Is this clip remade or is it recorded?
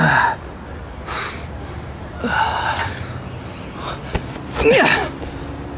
recorded